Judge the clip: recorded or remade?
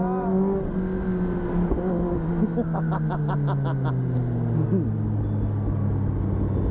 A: recorded